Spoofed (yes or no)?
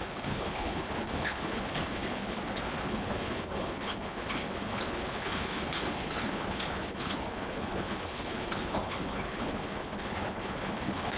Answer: yes